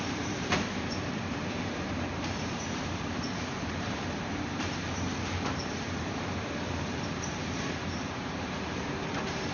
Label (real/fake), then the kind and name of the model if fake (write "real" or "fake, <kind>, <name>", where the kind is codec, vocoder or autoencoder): fake, vocoder, BigVGAN v2